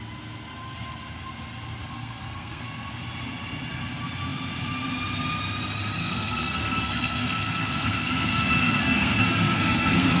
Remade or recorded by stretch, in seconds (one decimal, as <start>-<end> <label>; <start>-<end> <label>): 0.0-1.8 recorded; 1.8-2.6 remade; 2.6-6.0 recorded; 6.0-10.2 remade